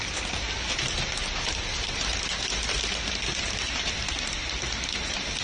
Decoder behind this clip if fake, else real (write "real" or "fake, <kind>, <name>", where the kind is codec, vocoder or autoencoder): real